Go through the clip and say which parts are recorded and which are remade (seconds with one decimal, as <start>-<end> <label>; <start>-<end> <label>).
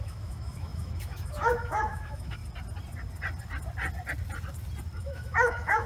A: 0.0-2.4 remade; 2.4-4.9 recorded; 4.9-5.9 remade